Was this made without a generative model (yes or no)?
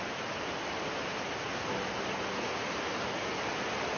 yes